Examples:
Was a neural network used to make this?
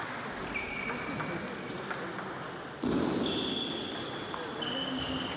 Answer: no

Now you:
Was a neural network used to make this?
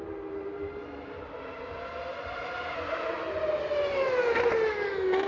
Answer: no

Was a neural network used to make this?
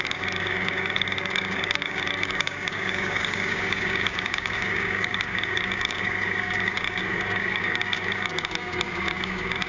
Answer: yes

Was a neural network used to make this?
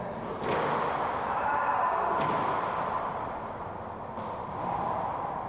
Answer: no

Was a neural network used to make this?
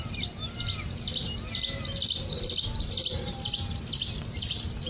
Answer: no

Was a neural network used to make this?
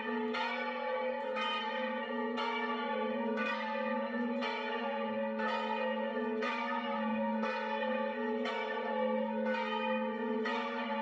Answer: yes